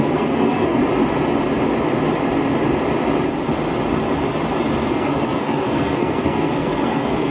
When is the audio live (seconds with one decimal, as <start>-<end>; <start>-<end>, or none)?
0.8-4.8